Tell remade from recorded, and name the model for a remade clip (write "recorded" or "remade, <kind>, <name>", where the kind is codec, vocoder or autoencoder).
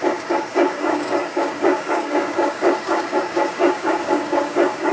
remade, codec, DAC